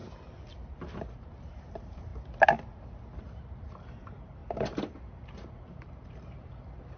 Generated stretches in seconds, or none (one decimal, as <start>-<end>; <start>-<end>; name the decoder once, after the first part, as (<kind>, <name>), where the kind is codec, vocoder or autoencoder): 1.4-2.1 (vocoder, BigVGAN v2); 3.2-4.4; 5.7-7.0